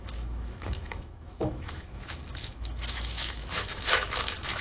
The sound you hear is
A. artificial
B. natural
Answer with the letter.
A